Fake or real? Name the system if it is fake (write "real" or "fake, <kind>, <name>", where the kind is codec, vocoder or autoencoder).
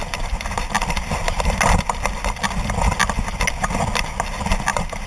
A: real